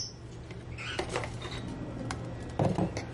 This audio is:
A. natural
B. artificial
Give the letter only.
A